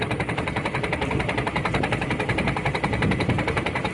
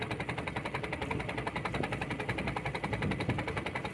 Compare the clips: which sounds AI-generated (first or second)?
first